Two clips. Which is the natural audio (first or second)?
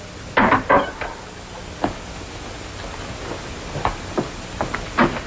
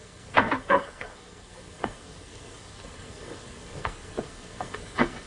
first